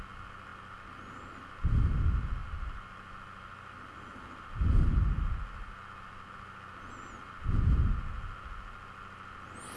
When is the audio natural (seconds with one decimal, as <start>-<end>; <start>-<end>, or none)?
0.0-9.8